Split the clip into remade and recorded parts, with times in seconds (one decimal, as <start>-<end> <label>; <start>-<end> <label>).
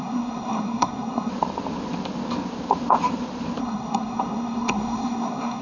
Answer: 0.0-1.3 remade; 1.3-3.6 recorded; 3.6-5.6 remade